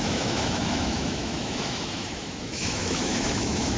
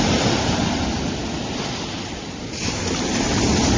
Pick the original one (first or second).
second